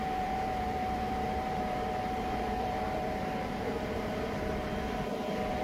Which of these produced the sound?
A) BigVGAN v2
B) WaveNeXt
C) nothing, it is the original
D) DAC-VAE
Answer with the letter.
A